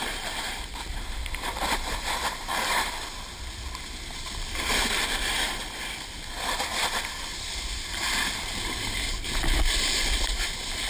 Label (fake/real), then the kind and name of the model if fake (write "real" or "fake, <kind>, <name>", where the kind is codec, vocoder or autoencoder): fake, vocoder, BigVGAN v2